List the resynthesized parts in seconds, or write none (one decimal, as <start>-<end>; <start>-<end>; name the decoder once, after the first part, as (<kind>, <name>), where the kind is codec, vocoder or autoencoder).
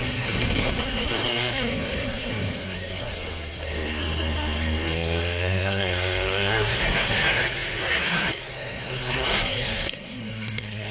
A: 0.0-10.9 (codec, SNAC)